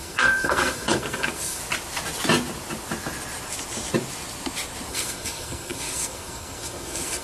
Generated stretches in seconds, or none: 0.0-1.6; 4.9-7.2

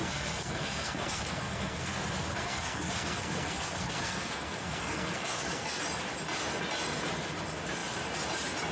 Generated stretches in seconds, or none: 0.0-1.9; 2.3-5.8